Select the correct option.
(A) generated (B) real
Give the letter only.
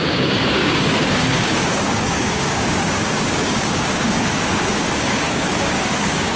A